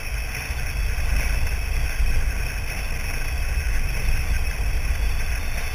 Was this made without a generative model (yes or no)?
yes